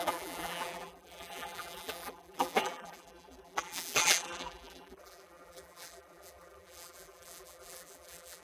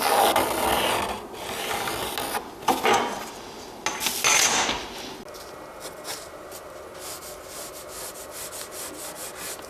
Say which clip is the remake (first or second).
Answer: first